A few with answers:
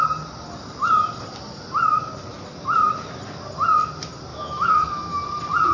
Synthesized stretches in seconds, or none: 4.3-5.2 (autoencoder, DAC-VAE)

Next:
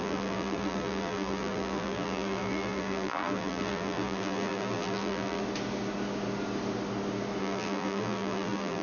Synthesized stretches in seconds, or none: 0.0-5.4 (vocoder, BigVGAN v2); 7.4-8.8

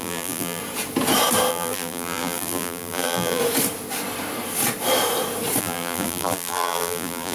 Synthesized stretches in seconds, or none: 0.0-0.6 (vocoder, BigVGAN v2); 1.5-3.4; 5.6-7.3

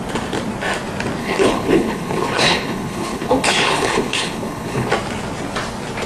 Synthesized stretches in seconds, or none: 1.2-4.9 (codec, HILCodec)